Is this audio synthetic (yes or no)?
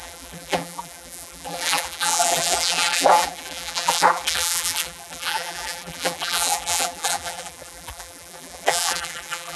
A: yes